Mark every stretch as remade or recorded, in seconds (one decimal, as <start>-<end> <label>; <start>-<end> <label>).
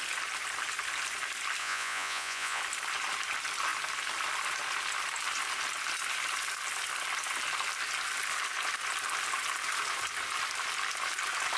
0.0-1.6 recorded; 1.6-2.6 remade; 2.6-11.6 recorded